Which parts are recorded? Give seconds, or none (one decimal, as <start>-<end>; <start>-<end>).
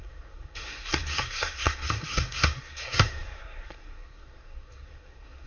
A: none